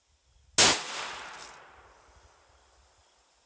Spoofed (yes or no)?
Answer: no